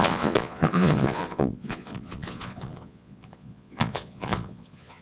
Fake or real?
fake